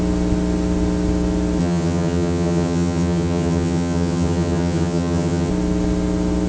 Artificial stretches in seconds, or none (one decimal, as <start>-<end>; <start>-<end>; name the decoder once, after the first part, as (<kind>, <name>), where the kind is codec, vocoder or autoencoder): 1.6-5.5 (vocoder, HiFi-GAN)

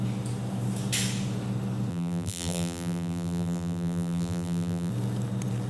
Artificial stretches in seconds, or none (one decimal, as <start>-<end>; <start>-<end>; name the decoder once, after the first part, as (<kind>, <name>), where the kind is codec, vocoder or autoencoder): 1.9-4.9 (vocoder, BigVGAN v2)

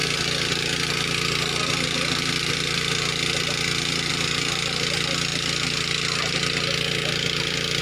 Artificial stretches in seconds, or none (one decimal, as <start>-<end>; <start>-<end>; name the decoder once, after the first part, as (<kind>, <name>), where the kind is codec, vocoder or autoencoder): none

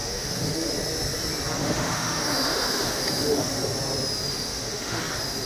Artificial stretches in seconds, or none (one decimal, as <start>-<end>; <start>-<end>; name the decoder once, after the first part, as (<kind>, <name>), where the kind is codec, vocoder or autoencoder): 0.0-0.7 (autoencoder, DAC-VAE); 1.6-3.6; 4.3-5.0

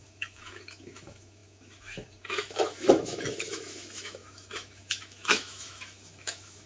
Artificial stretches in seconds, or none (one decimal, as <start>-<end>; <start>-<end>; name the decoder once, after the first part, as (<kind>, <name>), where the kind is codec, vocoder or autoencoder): 0.0-6.7 (autoencoder, DAC-VAE)